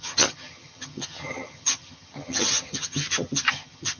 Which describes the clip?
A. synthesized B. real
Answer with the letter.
A